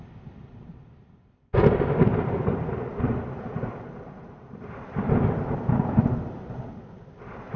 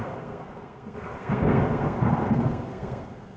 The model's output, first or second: second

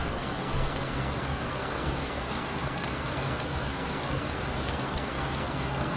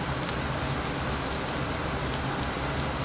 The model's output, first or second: first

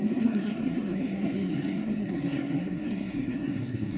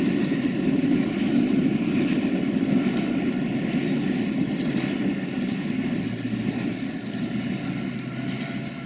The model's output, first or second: first